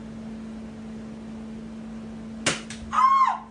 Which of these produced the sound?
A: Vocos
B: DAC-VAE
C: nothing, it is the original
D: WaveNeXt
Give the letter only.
C